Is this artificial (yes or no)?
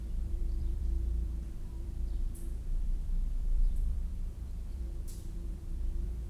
yes